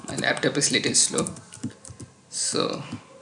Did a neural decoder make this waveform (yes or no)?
no